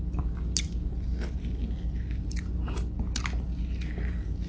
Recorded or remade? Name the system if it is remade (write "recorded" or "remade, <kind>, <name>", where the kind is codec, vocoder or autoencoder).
recorded